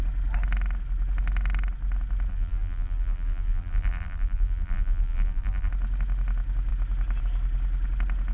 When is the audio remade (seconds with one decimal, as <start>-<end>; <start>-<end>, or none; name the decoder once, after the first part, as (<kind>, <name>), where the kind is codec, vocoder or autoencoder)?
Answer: 2.3-5.7 (vocoder, BigVGAN v2)